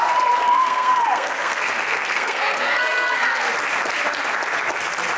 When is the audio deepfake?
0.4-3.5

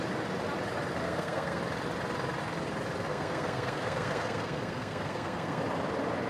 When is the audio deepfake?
1.0-1.6; 3.1-5.6